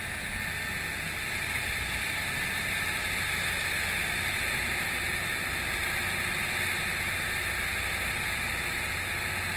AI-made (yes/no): no